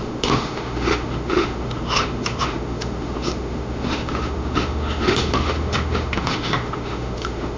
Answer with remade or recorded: remade